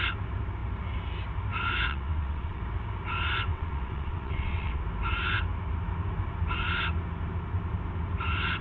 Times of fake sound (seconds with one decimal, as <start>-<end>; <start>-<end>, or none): 1.9-2.6; 3.5-4.8